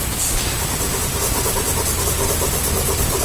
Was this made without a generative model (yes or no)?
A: yes